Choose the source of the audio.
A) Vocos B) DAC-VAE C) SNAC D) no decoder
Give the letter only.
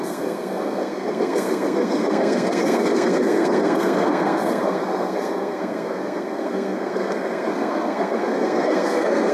C